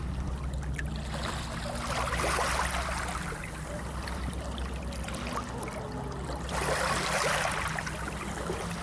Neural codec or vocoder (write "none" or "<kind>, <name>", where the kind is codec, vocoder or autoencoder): none